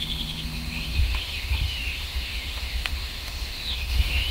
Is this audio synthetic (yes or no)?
yes